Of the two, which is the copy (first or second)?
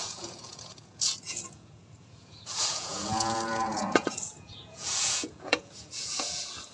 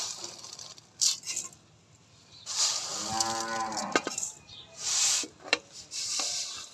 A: first